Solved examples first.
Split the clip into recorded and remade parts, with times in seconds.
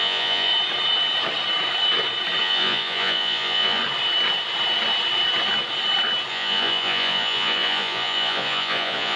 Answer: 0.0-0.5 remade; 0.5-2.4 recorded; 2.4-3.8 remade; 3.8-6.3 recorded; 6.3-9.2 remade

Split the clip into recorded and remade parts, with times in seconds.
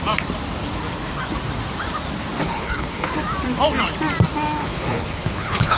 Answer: 0.0-2.4 recorded; 2.4-3.1 remade; 3.1-4.6 recorded; 4.6-5.8 remade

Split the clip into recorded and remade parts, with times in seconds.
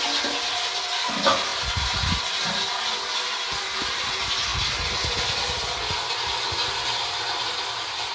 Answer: 0.0-8.1 recorded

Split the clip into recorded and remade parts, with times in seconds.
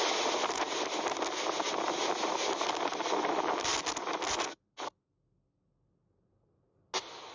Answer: 0.0-7.3 recorded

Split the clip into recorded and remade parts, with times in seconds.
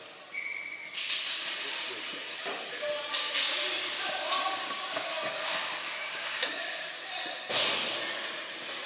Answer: 0.0-3.2 recorded; 3.2-7.0 remade; 7.0-8.9 recorded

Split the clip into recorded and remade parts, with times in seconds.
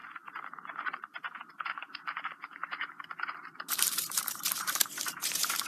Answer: 0.0-1.5 recorded; 1.5-5.7 remade